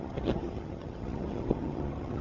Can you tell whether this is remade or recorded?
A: remade